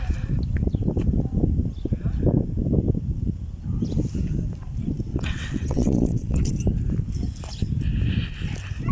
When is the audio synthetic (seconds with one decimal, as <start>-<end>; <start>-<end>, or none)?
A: 5.1-6.5